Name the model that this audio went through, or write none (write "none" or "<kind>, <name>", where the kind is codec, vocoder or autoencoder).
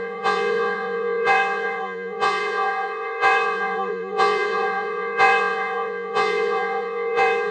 vocoder, Vocos